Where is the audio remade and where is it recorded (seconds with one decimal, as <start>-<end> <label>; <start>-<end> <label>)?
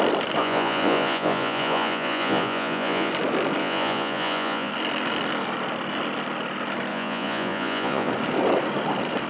0.0-0.4 recorded; 0.4-3.1 remade; 3.1-3.6 recorded; 3.6-4.7 remade; 4.7-6.9 recorded; 6.9-8.1 remade; 8.1-9.3 recorded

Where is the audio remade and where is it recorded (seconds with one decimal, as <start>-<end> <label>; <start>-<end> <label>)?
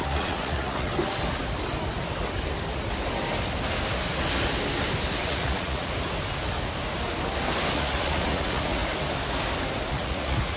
0.0-0.9 remade; 0.9-5.2 recorded; 5.2-5.9 remade; 5.9-7.7 recorded; 7.7-8.8 remade; 8.8-9.9 recorded; 9.9-10.6 remade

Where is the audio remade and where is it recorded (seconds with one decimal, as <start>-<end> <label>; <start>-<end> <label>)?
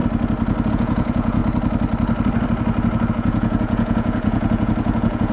0.0-0.7 recorded; 0.7-1.4 remade; 1.4-3.1 recorded; 3.1-5.3 remade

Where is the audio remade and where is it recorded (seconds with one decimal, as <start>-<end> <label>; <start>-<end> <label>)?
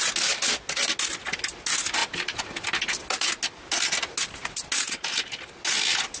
0.0-6.2 recorded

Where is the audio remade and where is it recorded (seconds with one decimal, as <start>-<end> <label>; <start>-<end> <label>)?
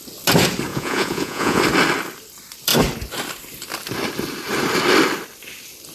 0.0-0.7 recorded; 0.7-1.6 remade; 1.6-5.9 recorded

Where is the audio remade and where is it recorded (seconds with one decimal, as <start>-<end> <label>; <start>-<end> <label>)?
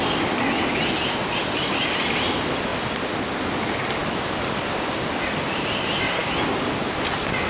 0.0-7.5 recorded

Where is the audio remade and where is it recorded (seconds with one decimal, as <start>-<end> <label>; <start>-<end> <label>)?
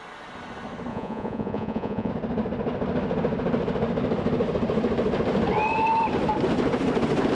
0.0-0.9 recorded; 0.9-2.1 remade; 2.1-7.3 recorded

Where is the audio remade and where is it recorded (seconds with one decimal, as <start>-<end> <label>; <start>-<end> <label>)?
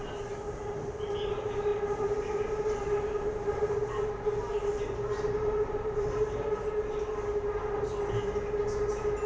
0.0-9.3 recorded